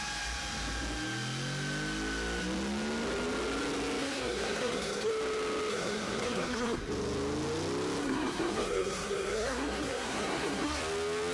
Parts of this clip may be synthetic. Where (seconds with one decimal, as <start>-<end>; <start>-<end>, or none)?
4.0-5.1; 5.7-6.8; 8.0-10.8